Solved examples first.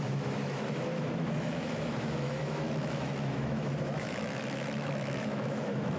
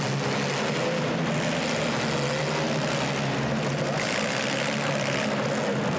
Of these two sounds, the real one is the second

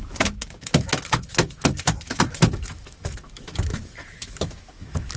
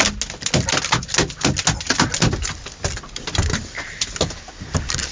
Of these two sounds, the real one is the second